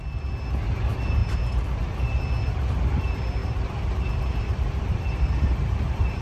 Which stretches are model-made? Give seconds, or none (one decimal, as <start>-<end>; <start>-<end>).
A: 1.2-1.8; 3.4-6.2

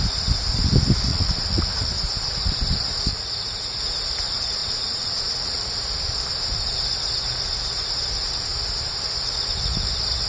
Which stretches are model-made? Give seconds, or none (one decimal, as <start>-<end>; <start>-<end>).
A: 1.1-1.9; 3.1-3.8; 4.6-5.7

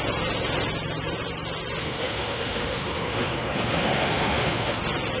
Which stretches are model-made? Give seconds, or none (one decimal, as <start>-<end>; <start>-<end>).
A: 1.8-4.8

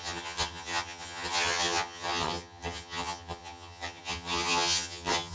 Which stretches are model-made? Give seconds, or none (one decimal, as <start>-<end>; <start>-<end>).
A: 0.0-5.3

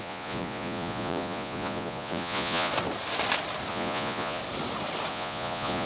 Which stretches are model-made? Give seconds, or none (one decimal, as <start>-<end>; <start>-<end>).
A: 0.0-2.7; 3.7-4.4; 5.1-5.9

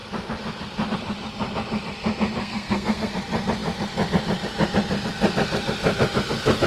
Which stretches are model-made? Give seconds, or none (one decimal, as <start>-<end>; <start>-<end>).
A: 2.4-3.1

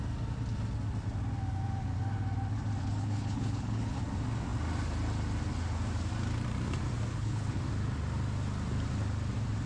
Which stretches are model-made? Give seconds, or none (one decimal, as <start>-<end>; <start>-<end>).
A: 2.8-4.0; 7.1-7.6

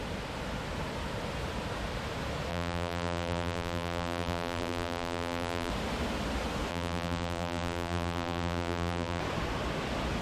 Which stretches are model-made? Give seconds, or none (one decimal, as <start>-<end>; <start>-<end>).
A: 2.5-5.7; 6.7-9.2